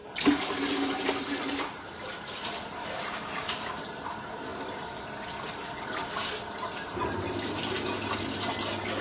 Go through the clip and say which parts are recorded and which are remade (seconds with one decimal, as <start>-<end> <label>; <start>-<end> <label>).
0.0-4.5 remade; 4.5-9.0 recorded